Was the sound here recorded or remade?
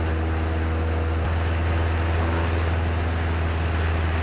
recorded